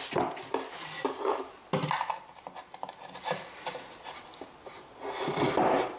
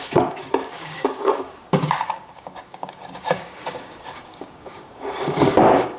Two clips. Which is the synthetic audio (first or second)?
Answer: second